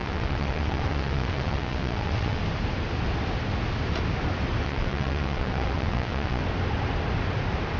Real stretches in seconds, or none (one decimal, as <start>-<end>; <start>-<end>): 2.4-4.6; 6.4-7.8